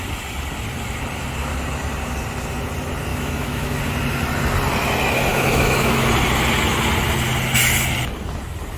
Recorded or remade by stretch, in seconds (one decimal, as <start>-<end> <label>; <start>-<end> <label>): 0.0-3.1 recorded; 3.1-3.8 remade; 3.8-5.3 recorded; 5.3-6.1 remade; 6.1-8.8 recorded

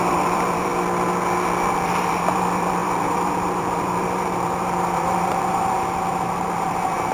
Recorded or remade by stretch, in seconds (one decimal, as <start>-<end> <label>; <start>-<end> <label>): 0.0-0.7 remade; 0.7-1.7 recorded; 1.7-7.1 remade

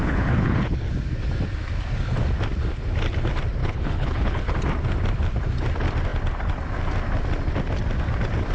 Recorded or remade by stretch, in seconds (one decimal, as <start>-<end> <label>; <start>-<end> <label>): 0.0-0.9 remade; 0.9-3.6 recorded; 3.6-4.5 remade; 4.5-8.5 recorded